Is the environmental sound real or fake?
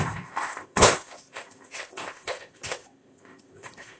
fake